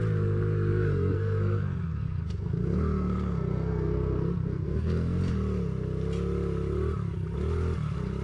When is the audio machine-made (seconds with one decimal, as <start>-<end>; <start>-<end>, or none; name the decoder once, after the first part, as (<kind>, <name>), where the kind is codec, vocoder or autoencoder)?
0.7-5.2 (codec, SNAC)